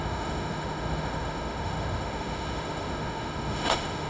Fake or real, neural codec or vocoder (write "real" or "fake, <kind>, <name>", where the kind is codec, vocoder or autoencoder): fake, autoencoder, DAC-VAE